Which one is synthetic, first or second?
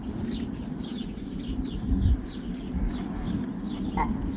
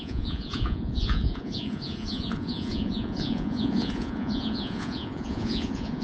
second